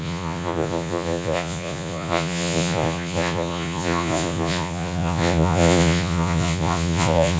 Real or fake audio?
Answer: fake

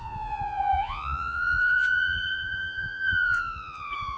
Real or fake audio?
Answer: fake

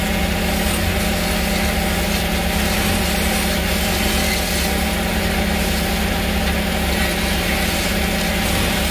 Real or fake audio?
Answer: real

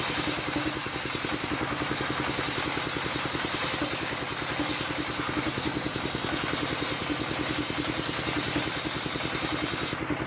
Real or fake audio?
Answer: real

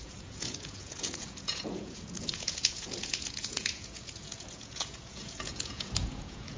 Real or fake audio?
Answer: fake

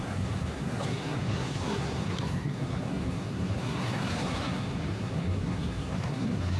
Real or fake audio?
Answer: fake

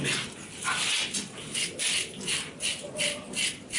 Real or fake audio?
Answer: real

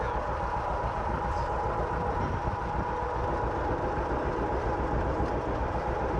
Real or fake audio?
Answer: real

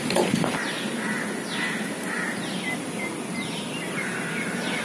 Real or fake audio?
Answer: real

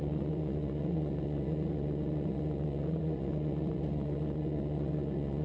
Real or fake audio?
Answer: fake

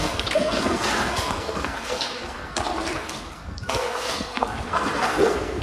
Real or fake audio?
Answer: fake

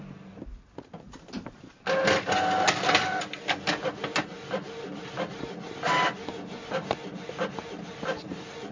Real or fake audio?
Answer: real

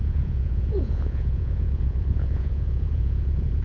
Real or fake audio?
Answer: fake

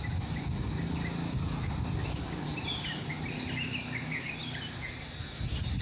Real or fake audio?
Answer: real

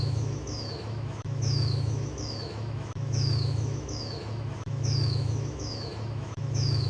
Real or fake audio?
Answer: fake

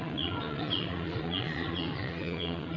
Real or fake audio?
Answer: fake